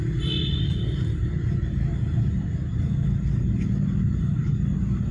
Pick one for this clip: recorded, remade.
recorded